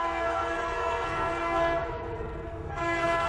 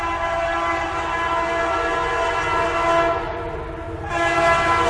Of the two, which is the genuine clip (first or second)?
second